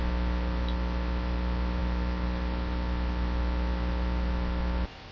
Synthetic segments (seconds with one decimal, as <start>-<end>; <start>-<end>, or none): none